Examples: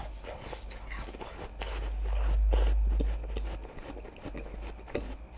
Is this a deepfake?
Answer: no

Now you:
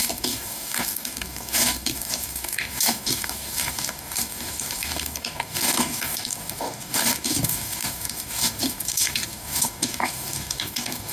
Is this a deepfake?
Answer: yes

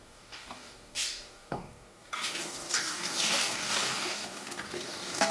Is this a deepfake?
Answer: yes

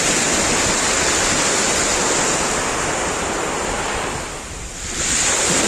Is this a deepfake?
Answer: no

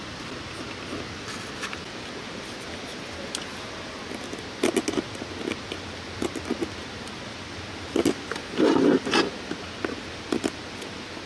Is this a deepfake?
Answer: no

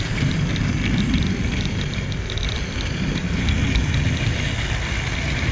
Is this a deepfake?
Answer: no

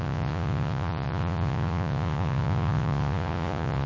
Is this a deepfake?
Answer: yes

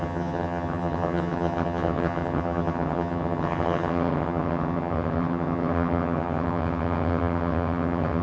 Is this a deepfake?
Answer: yes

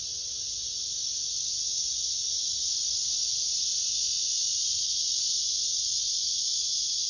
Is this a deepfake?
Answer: no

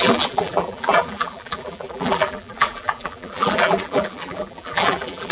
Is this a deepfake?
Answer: yes